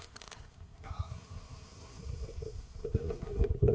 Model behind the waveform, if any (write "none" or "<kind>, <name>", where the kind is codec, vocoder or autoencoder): codec, SNAC